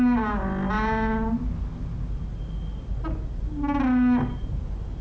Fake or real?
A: real